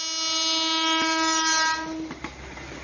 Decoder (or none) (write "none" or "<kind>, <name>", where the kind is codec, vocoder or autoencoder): none